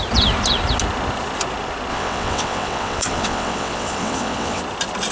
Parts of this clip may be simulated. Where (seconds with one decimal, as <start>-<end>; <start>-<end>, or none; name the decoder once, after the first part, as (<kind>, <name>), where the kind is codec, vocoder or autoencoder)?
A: 1.9-4.6 (vocoder, WaveNeXt)